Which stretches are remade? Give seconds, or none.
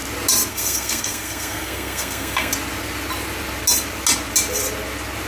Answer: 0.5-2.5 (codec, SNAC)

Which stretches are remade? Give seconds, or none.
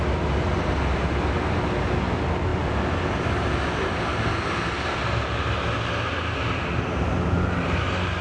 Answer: none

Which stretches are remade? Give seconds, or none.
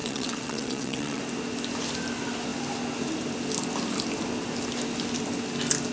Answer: 0.0-1.2 (vocoder, WaveNeXt)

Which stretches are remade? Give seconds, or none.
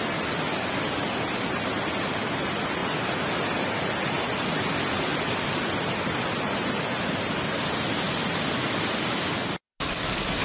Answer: none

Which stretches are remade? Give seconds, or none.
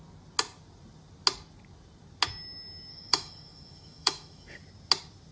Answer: 2.9-4.6 (autoencoder, DAC-VAE)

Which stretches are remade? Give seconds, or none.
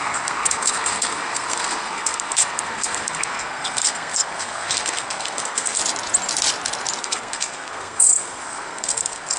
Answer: 0.0-5.8 (codec, SNAC); 7.0-9.4